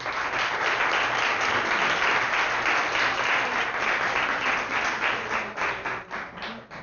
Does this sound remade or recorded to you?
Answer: recorded